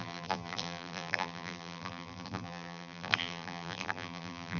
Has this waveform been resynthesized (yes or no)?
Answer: yes